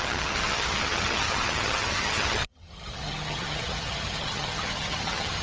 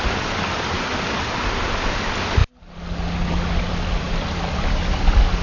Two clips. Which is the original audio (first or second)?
second